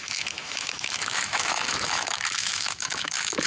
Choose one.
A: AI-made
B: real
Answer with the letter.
A